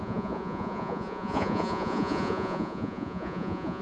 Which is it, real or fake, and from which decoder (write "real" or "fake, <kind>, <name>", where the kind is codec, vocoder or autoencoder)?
fake, vocoder, Vocos